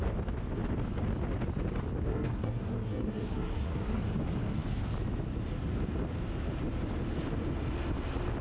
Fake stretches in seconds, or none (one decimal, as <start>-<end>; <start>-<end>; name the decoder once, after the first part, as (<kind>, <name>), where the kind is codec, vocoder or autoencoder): 2.1-4.0 (codec, SNAC)